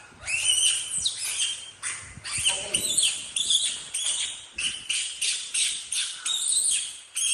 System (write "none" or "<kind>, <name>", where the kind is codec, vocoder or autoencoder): none